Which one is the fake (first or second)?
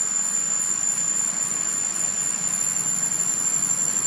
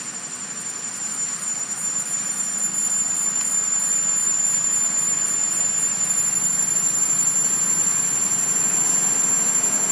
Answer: first